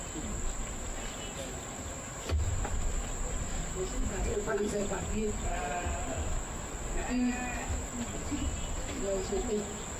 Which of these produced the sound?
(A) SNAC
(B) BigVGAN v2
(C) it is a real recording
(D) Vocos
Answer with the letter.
C